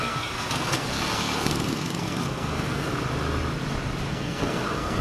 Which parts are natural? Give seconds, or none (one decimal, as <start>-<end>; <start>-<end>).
2.9-4.1